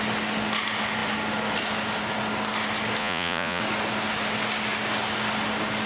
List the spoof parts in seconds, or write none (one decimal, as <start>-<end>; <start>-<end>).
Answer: 3.0-3.6